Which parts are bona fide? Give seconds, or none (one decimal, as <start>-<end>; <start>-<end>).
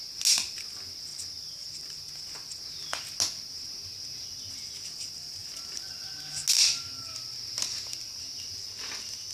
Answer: 0.0-1.1; 2.1-9.3